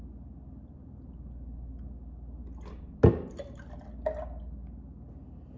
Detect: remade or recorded recorded